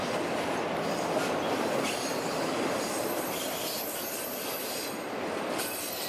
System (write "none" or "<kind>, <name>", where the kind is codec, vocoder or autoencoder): none